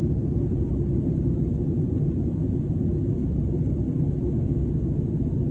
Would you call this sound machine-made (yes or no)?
no